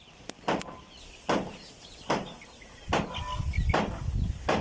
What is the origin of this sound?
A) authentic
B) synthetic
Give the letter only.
A